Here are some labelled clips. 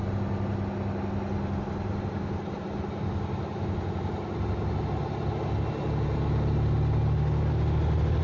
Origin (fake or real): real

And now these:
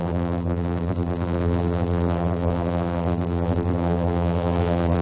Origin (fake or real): fake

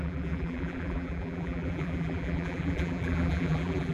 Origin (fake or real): fake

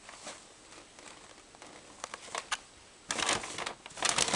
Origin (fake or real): real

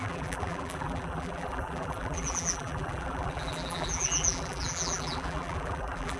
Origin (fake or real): fake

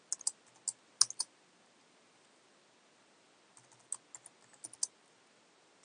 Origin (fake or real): real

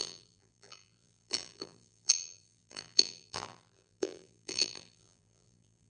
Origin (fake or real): fake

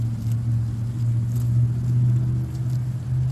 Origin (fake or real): real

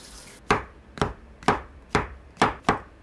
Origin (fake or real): fake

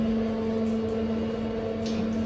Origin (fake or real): real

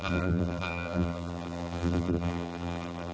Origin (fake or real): fake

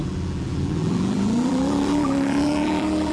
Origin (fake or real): fake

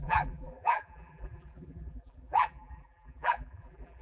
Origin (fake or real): fake